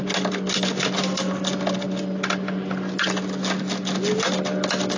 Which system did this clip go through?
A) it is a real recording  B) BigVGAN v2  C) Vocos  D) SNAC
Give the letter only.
A